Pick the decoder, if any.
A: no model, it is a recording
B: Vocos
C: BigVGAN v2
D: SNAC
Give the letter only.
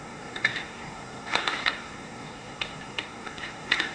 D